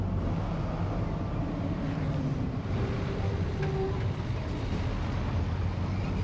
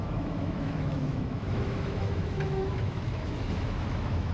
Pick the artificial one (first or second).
second